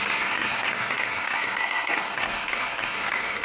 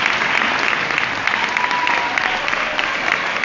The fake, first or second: first